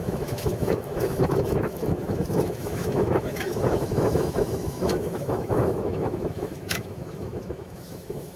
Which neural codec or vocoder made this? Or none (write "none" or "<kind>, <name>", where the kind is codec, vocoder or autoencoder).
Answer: autoencoder, DAC-VAE